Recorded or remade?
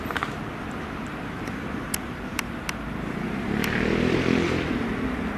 recorded